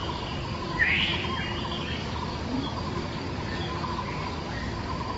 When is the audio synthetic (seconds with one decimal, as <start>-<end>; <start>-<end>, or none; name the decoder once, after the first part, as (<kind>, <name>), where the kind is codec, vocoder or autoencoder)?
0.0-1.1 (codec, DAC); 1.6-5.2

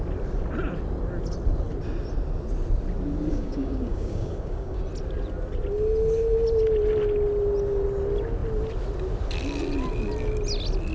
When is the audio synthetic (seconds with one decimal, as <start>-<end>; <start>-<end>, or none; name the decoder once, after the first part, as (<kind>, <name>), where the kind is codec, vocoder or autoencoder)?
3.3-4.8 (codec, DAC)

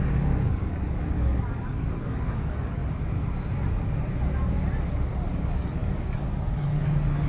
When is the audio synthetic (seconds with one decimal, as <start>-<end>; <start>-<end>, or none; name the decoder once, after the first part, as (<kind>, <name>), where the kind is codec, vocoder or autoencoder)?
0.0-2.8 (codec, DAC); 5.3-7.3

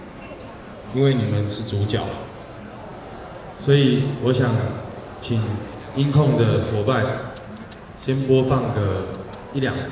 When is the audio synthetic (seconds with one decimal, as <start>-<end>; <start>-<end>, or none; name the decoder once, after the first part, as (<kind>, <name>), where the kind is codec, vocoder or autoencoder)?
0.7-1.6 (codec, DAC)

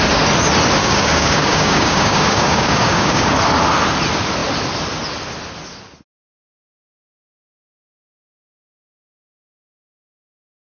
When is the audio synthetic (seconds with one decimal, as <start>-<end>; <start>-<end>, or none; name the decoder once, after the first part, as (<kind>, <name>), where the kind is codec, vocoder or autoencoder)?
0.8-3.3 (codec, DAC)

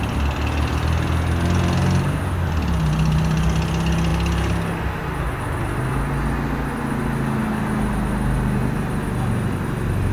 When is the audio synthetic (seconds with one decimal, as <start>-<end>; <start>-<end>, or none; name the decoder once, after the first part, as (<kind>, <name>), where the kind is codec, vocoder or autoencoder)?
none

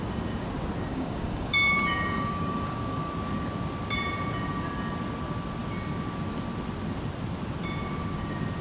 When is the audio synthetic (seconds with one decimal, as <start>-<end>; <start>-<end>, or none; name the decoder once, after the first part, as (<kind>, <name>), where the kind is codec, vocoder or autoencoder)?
0.9-3.1 (codec, DAC)